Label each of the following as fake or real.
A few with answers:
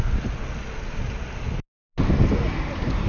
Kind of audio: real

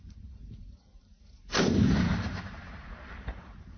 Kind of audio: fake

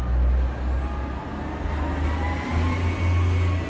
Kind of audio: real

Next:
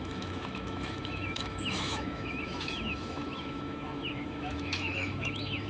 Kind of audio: fake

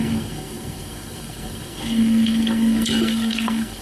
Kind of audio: fake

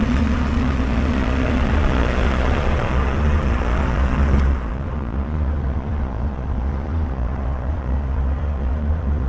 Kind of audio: fake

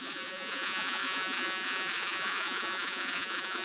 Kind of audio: fake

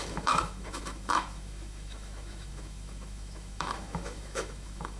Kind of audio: fake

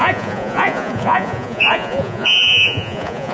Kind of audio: fake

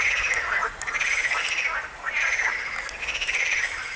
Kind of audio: real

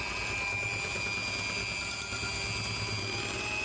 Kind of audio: real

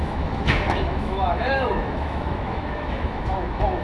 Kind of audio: fake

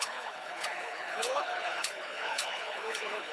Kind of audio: fake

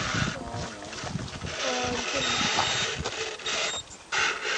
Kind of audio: real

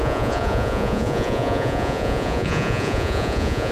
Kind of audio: fake